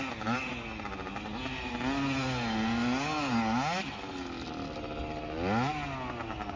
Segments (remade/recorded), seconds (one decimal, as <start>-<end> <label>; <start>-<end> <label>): 0.0-6.6 recorded